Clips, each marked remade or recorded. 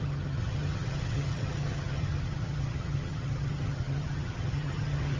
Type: remade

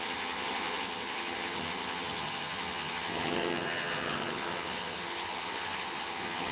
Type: remade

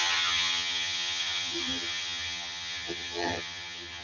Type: remade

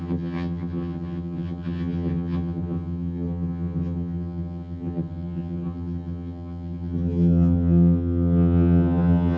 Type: remade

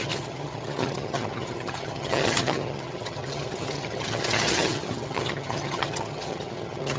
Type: remade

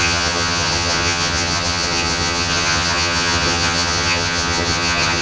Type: remade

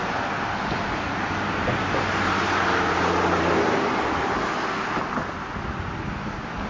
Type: recorded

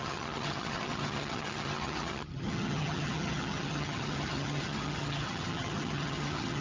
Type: remade